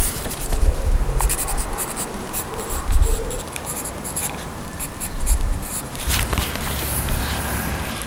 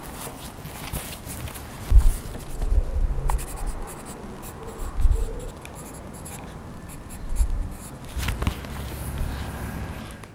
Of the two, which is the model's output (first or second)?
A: first